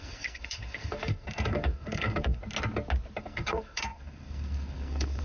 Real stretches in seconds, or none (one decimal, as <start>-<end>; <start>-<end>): 2.4-3.2